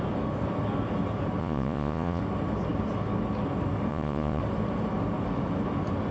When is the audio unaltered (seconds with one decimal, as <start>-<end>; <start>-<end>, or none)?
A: 0.0-1.4; 2.2-3.9; 4.4-6.1